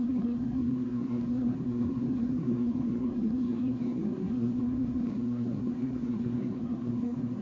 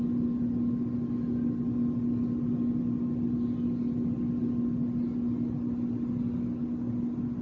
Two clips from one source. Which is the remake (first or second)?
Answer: first